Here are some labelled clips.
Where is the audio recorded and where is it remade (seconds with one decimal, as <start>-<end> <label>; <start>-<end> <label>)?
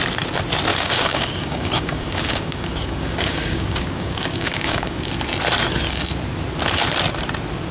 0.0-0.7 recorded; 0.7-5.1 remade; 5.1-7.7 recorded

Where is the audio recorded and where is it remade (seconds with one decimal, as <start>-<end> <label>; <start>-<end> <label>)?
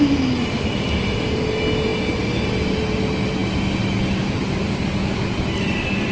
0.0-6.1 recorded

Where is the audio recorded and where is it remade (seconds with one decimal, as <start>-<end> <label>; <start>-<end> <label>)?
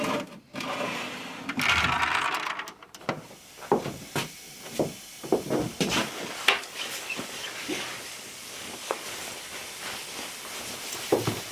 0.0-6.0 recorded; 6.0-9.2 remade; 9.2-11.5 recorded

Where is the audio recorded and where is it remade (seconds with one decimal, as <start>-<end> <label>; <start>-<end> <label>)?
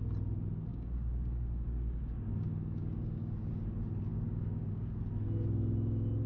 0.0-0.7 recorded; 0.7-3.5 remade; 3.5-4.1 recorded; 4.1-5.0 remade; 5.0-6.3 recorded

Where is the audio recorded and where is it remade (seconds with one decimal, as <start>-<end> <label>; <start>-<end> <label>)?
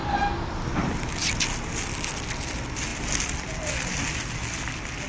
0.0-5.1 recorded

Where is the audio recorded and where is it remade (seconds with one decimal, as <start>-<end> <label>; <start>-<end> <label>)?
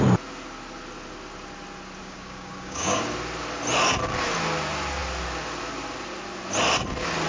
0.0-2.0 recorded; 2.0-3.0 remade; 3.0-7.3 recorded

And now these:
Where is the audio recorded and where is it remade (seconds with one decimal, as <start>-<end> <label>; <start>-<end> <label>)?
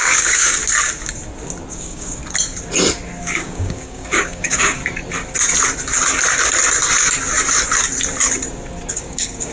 0.0-0.6 remade; 0.6-1.7 recorded; 1.7-2.2 remade; 2.2-3.2 recorded; 3.2-4.8 remade; 4.8-8.9 recorded; 8.9-9.5 remade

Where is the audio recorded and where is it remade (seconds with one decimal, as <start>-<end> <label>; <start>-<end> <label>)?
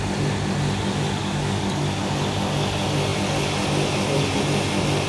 0.0-1.2 recorded; 1.2-2.0 remade; 2.0-5.1 recorded